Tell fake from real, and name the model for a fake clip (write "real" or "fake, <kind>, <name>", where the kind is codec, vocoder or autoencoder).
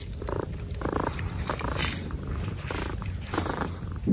fake, vocoder, BigVGAN v2